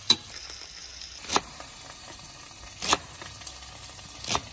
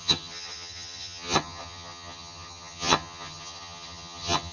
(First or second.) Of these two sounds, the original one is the first